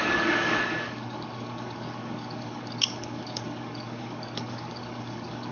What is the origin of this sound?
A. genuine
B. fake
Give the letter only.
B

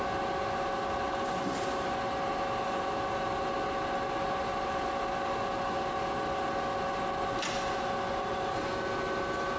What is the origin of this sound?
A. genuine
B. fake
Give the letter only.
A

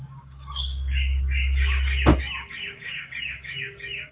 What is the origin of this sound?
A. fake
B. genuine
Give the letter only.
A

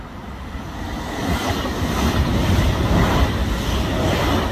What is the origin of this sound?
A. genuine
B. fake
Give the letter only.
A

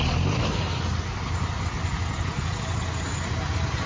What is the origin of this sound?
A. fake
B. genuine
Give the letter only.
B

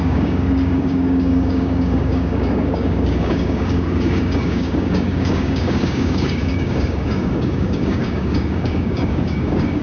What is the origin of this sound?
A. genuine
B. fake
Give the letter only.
B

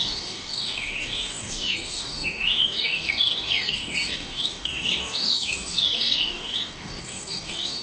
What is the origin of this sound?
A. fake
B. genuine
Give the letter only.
A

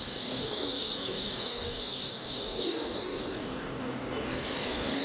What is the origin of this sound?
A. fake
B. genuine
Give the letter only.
A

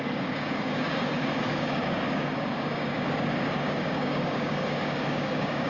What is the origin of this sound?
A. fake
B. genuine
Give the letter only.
A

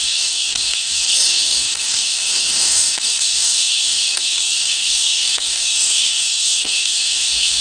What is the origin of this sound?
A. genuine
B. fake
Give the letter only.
B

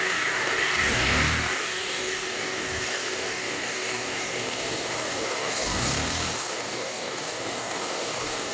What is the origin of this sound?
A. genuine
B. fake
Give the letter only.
B